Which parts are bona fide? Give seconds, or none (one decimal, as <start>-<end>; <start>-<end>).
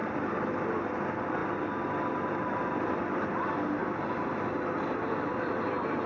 0.8-1.4; 3.3-3.8; 5.6-6.1